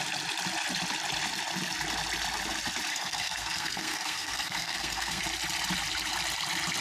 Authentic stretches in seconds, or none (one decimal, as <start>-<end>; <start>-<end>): 0.0-2.9; 5.2-6.8